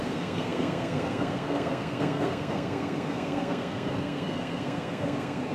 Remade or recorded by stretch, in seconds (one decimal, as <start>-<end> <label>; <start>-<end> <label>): 0.0-5.5 remade